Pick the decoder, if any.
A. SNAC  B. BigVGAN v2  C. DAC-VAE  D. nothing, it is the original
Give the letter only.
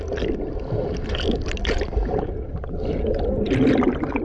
D